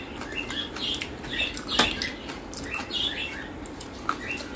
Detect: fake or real real